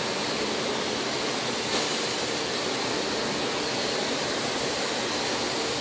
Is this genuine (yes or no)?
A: yes